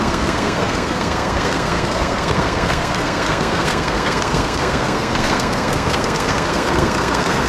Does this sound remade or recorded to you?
remade